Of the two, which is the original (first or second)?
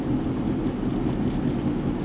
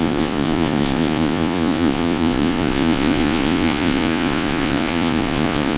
first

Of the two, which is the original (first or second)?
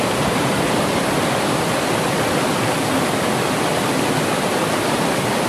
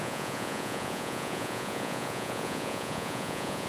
first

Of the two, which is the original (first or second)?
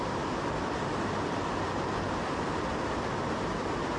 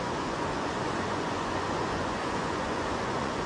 first